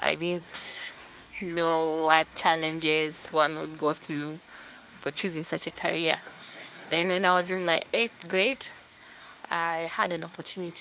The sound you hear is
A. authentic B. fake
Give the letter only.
B